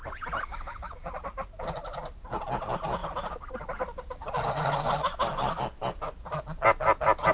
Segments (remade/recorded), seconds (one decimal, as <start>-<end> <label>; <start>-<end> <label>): 0.0-7.3 recorded